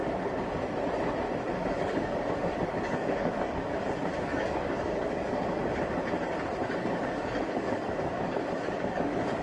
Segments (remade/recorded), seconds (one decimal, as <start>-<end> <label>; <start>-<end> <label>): 0.0-1.4 recorded; 1.4-5.6 remade; 5.6-6.7 recorded; 6.7-9.4 remade